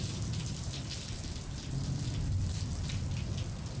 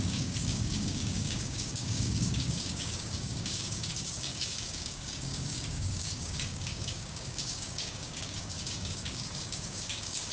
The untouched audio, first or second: first